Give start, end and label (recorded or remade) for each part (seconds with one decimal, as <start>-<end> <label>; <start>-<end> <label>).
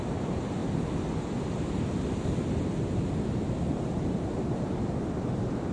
0.0-0.6 remade; 0.6-4.0 recorded; 4.0-5.7 remade